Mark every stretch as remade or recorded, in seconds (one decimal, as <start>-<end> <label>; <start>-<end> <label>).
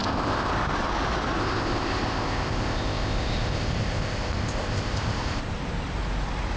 0.0-0.5 remade; 0.5-1.4 recorded; 1.4-5.4 remade; 5.4-6.6 recorded